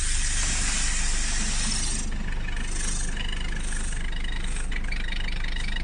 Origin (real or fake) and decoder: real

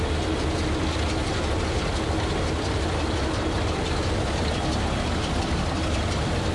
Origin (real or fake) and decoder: real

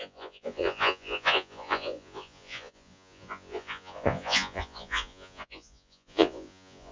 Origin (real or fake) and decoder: fake, vocoder, Vocos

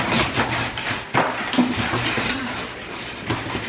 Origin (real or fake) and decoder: real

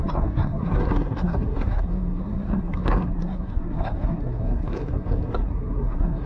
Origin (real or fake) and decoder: fake, codec, SNAC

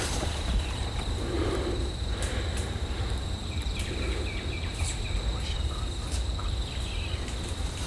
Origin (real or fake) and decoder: fake, vocoder, BigVGAN v2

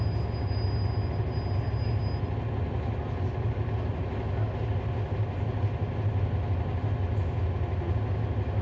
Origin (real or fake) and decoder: real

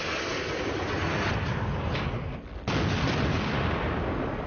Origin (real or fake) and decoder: real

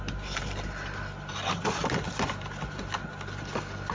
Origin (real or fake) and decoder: real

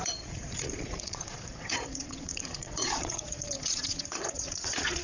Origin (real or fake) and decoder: fake, vocoder, Vocos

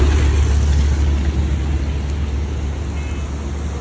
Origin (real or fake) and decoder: real